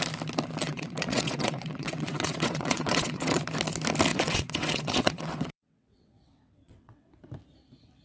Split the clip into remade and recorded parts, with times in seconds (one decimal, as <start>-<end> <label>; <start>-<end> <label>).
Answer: 0.0-0.6 recorded; 0.6-3.4 remade; 3.4-4.1 recorded; 4.1-7.1 remade; 7.1-8.0 recorded